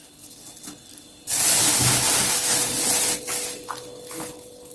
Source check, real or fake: real